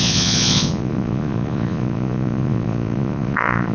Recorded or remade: remade